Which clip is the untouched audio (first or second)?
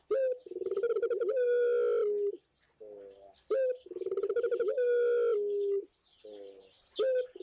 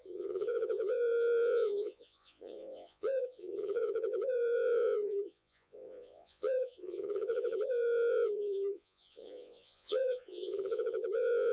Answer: first